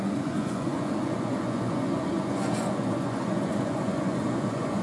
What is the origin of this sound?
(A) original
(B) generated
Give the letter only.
B